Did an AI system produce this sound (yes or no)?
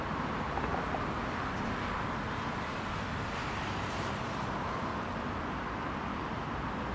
no